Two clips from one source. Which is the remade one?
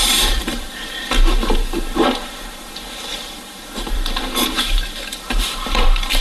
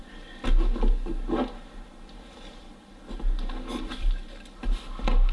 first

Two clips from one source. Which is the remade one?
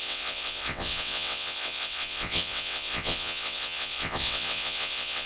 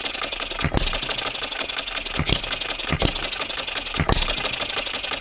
first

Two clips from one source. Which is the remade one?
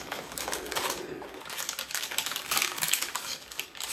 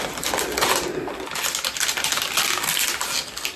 first